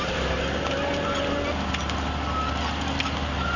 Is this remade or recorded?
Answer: recorded